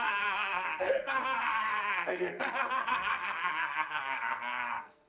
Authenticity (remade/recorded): remade